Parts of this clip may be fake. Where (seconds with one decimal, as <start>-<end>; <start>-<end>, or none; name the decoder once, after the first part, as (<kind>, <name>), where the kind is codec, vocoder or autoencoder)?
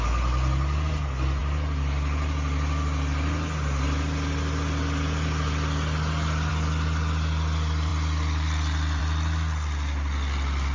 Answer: none